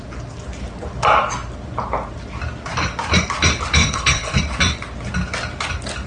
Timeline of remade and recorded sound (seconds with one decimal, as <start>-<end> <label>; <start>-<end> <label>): 0.0-3.8 recorded; 3.8-4.4 remade; 4.4-6.1 recorded